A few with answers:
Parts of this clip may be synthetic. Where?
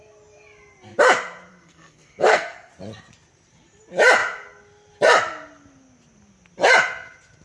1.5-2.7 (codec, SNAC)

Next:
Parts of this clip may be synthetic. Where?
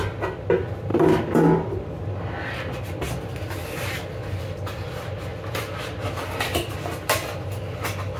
none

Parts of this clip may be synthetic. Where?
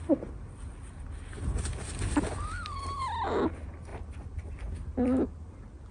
none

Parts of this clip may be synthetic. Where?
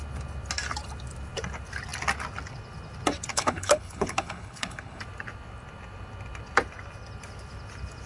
3.3-5.0 (codec, HILCodec)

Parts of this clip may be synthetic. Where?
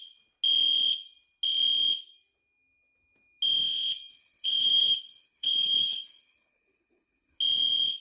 4.1-7.4 (codec, HILCodec)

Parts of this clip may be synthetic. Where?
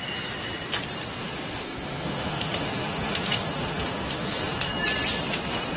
1.2-4.7 (autoencoder, DAC-VAE)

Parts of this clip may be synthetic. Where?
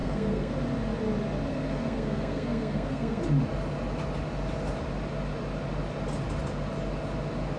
0.0-0.5 (codec, SNAC); 1.5-3.2